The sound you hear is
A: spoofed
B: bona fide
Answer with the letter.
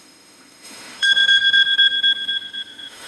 A